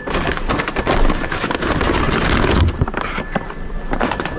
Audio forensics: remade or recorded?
recorded